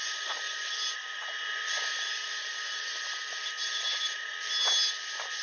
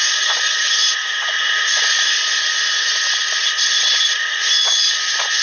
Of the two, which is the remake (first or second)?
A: second